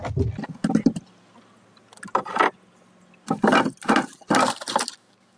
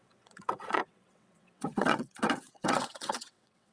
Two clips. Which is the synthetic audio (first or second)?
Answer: second